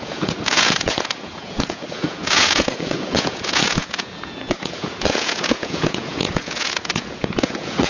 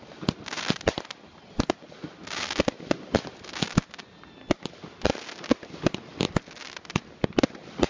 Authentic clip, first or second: second